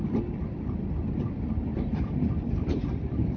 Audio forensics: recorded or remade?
recorded